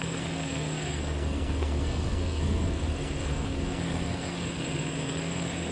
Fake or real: fake